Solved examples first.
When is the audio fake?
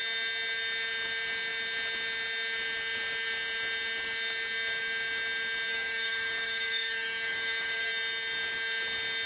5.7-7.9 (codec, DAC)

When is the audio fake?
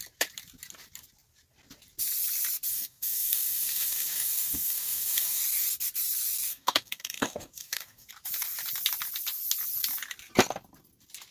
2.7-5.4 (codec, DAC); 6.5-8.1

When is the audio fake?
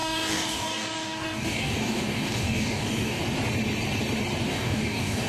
0.0-3.2 (codec, DAC); 4.5-5.3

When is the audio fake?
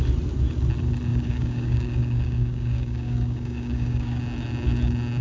1.1-4.2 (codec, DAC)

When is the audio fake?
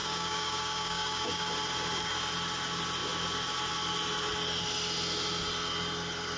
0.0-1.5 (codec, DAC)